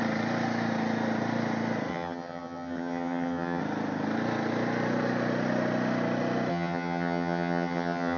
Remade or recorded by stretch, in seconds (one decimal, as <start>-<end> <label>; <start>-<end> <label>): 0.0-1.9 recorded; 1.9-3.6 remade; 3.6-6.5 recorded; 6.5-8.2 remade